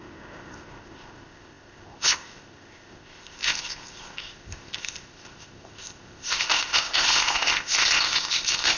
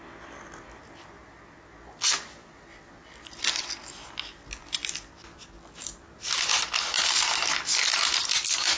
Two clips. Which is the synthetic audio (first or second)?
first